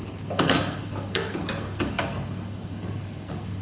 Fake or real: fake